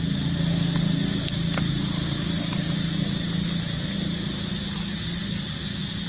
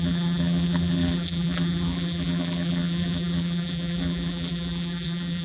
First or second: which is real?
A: first